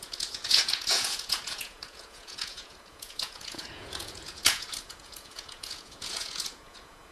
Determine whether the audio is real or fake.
fake